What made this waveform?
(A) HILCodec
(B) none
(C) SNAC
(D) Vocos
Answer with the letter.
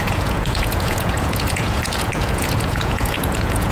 D